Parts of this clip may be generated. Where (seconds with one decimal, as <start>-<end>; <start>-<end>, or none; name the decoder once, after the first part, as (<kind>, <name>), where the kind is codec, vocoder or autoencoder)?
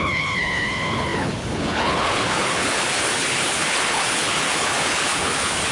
0.0-5.7 (codec, HILCodec)